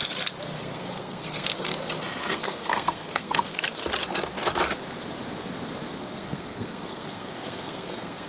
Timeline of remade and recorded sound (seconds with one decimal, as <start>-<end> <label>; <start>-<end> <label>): 0.0-0.6 recorded; 0.6-1.7 remade; 1.7-2.3 recorded; 2.3-3.8 remade; 3.8-6.0 recorded; 6.0-8.3 remade